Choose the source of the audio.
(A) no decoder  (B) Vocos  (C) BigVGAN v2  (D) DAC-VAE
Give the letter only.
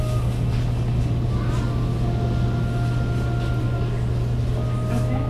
A